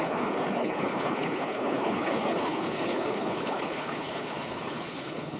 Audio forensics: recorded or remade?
remade